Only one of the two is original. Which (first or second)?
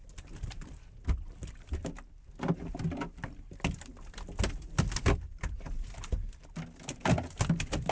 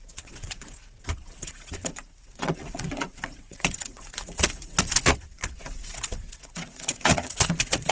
first